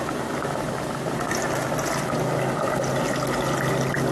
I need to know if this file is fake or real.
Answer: real